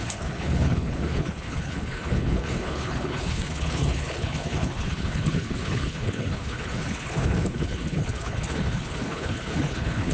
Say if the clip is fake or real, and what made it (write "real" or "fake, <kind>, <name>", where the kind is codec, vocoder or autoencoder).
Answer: fake, codec, HILCodec